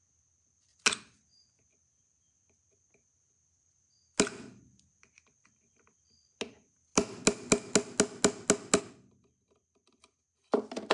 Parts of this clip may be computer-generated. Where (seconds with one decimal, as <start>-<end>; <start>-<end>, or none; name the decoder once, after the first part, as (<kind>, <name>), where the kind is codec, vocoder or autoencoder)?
none